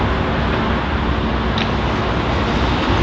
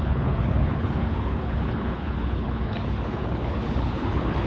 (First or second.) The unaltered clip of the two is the first